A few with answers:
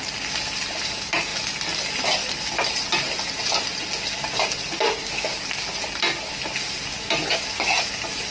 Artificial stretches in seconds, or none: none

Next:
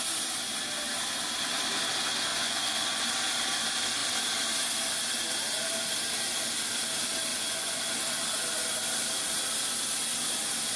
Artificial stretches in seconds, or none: 2.3-3.0 (vocoder, Vocos); 7.3-7.8